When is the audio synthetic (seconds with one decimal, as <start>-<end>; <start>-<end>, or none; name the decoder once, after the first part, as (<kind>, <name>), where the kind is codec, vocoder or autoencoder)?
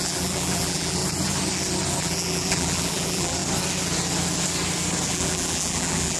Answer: 0.0-1.0 (vocoder, BigVGAN v2); 2.0-3.4; 5.1-6.2